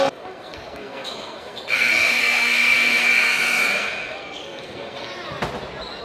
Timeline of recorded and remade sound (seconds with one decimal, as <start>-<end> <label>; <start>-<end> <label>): 0.0-5.1 remade; 5.1-6.0 recorded